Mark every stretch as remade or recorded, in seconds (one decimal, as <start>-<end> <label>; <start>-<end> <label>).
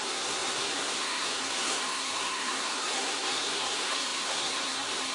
0.0-5.1 remade